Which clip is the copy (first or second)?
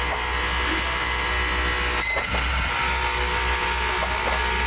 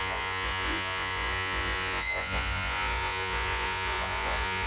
second